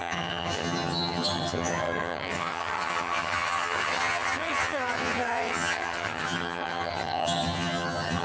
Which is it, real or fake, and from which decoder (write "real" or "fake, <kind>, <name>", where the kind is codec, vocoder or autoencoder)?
fake, vocoder, HiFi-GAN